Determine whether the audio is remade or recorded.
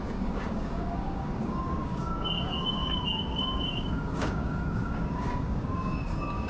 remade